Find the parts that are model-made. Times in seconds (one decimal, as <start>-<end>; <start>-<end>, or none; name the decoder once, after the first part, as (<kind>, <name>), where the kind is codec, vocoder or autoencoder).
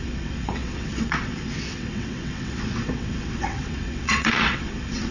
0.0-5.1 (vocoder, WaveNeXt)